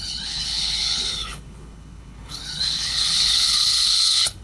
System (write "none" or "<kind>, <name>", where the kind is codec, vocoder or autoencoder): codec, HILCodec